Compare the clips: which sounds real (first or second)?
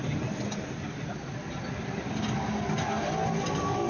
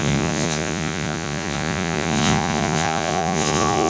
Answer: first